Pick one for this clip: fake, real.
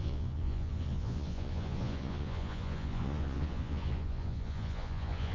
fake